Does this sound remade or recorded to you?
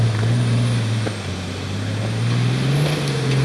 recorded